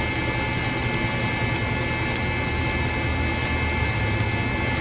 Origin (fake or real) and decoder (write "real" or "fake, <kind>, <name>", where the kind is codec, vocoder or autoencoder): real